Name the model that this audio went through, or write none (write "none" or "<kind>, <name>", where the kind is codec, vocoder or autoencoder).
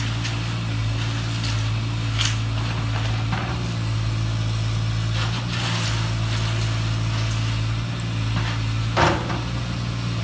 none